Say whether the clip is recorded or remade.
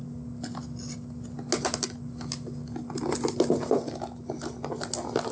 recorded